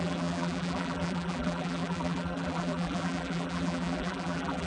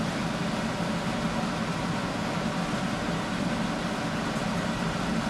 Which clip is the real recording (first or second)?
second